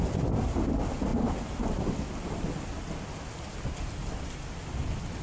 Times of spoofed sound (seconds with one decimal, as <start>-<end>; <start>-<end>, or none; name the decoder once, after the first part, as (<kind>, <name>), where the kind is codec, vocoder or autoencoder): none